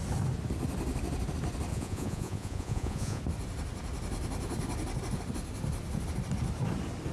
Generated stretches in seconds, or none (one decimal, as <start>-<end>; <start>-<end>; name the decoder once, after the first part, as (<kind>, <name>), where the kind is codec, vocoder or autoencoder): 1.7-3.2 (vocoder, Vocos)